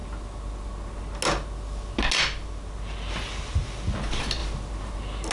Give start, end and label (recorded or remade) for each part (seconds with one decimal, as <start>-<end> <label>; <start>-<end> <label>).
0.0-5.3 recorded